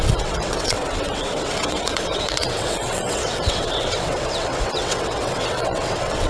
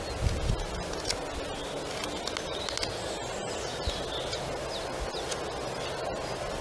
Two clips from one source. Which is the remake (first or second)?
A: first